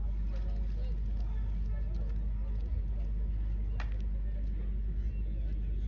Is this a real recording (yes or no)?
yes